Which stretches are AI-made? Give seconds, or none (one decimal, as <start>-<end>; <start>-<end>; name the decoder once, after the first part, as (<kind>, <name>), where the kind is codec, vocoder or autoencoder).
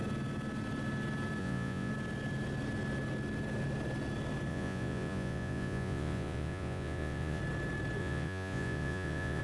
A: 1.4-1.9 (vocoder, Vocos); 4.5-7.4; 8.0-9.4